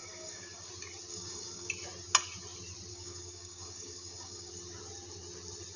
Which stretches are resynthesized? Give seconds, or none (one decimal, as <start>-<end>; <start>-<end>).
0.0-0.7; 1.1-1.7; 2.9-4.5